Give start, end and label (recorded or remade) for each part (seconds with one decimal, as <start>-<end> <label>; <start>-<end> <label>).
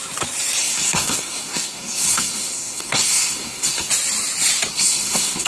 0.0-0.6 recorded; 0.6-3.9 remade; 3.9-4.7 recorded; 4.7-5.5 remade